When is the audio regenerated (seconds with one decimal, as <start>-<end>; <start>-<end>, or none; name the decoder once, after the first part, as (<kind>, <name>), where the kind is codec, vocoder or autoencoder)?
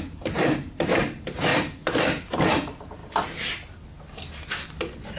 0.0-3.0 (vocoder, BigVGAN v2)